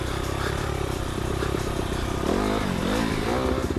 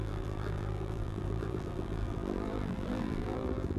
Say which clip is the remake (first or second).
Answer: second